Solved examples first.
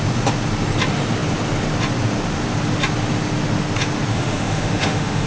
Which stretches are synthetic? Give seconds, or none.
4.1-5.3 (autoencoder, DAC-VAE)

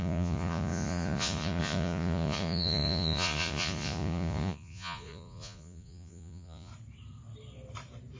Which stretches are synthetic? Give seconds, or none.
0.0-6.7 (vocoder, Vocos)